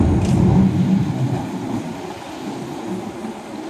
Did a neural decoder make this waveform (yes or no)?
no